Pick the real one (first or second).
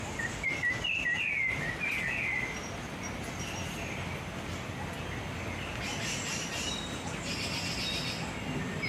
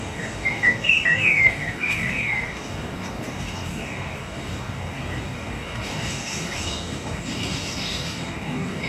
first